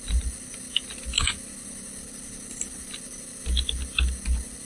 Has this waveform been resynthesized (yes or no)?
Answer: no